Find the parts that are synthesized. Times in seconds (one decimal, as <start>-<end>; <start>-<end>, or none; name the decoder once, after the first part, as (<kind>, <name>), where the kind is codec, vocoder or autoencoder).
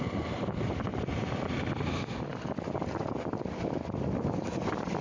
0.9-1.7 (vocoder, BigVGAN v2)